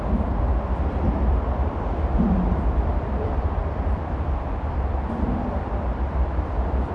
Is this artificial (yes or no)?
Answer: yes